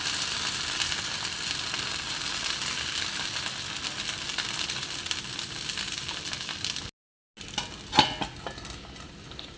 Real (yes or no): yes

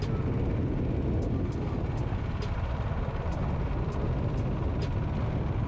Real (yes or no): yes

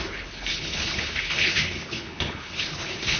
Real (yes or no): no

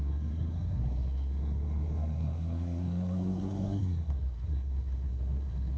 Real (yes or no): no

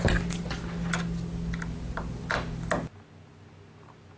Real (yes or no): yes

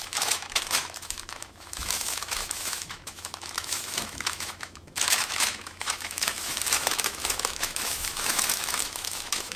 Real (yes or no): no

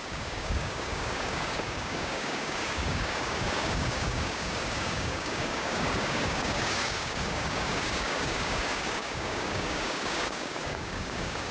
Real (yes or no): no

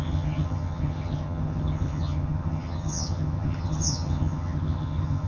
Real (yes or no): no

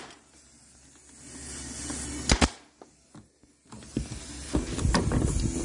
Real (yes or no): yes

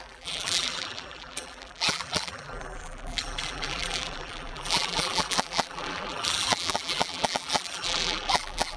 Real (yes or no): no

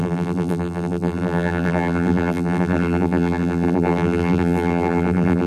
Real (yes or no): no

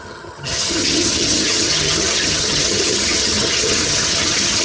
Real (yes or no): no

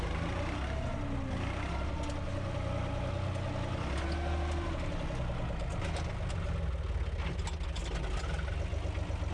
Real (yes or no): yes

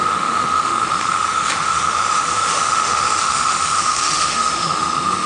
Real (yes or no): no